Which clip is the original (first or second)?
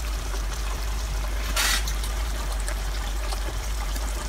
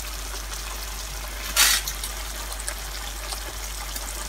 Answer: second